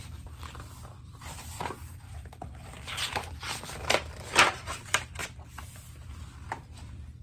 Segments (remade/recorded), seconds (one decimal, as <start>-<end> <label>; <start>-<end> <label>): 0.0-5.2 remade; 5.2-6.6 recorded; 6.6-7.2 remade